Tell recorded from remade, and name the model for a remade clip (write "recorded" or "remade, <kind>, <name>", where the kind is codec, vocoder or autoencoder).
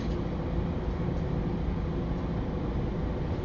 recorded